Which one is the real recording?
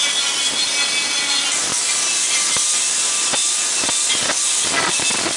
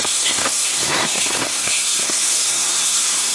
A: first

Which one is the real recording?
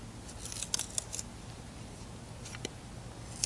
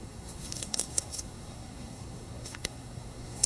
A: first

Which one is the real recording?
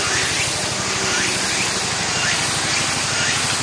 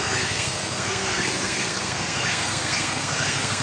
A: first